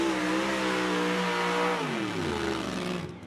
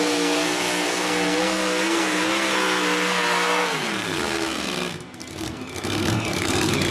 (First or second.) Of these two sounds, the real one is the first